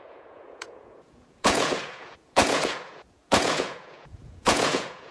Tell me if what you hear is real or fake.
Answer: fake